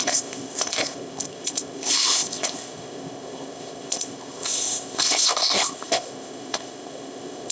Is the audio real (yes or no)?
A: no